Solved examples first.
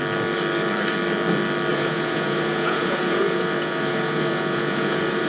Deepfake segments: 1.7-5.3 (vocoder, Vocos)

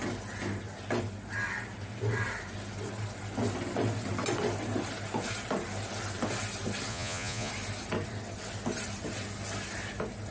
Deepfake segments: 6.9-7.5 (vocoder, Vocos)